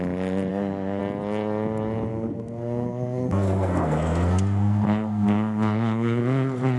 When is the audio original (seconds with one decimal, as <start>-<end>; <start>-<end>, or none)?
0.0-0.5; 1.0-2.1; 6.2-6.8

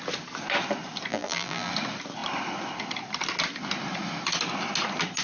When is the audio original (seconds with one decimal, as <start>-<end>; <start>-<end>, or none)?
0.0-1.1; 1.7-5.2

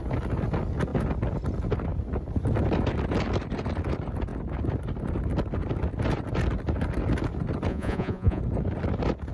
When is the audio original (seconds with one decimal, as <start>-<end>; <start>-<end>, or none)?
0.0-7.7; 8.4-9.3

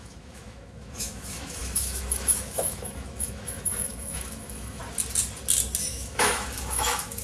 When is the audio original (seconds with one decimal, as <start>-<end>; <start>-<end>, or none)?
4.8-5.9

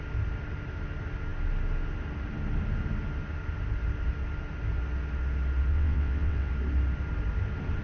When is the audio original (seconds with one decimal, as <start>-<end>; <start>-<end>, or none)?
0.0-5.7; 6.5-7.8

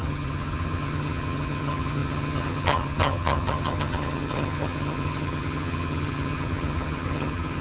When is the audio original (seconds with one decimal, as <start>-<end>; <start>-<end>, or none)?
none